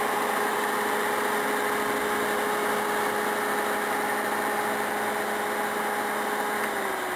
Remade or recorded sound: recorded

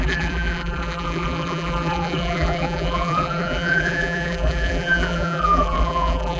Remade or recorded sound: remade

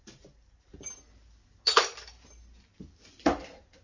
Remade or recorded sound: recorded